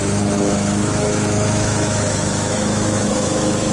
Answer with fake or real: fake